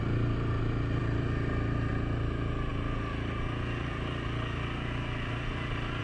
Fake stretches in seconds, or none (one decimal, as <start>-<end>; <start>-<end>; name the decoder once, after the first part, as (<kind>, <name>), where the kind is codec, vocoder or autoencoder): none